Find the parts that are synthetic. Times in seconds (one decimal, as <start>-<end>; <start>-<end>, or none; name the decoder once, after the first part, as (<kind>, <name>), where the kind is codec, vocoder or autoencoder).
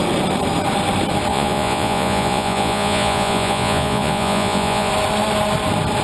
1.3-4.9 (vocoder, Vocos)